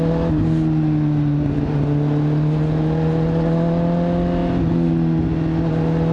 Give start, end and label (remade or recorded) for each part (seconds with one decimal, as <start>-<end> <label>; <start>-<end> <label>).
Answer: 0.0-6.1 recorded